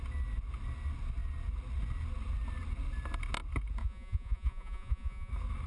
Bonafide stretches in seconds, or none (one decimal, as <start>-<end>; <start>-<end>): 0.0-3.8; 5.3-5.7